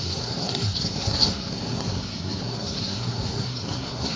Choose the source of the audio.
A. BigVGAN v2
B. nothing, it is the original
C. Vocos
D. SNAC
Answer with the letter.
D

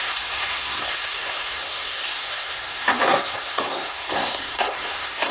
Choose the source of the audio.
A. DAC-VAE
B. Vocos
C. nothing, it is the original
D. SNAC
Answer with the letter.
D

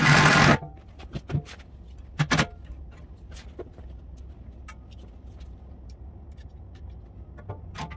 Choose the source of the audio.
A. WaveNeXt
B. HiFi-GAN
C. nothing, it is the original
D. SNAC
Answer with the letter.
C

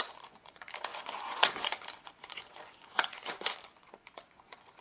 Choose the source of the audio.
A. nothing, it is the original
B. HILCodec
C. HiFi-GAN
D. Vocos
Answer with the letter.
D